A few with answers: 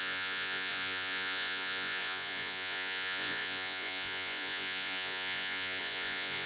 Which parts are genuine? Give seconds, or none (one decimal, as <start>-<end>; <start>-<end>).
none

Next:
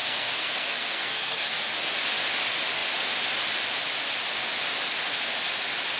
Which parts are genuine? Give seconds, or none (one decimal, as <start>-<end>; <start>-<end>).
1.7-6.0

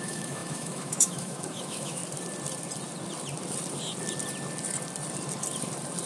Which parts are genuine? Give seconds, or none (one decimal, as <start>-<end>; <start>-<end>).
2.0-6.1

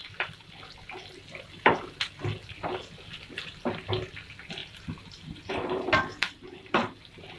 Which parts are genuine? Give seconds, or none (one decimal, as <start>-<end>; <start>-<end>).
0.0-4.6